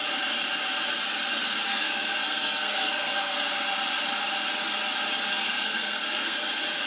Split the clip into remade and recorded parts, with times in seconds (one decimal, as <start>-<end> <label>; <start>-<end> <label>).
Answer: 0.0-1.7 recorded; 1.7-3.5 remade; 3.5-5.4 recorded; 5.4-6.4 remade; 6.4-6.9 recorded